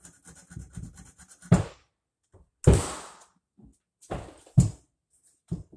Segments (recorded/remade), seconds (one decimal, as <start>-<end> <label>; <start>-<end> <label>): 0.0-5.8 recorded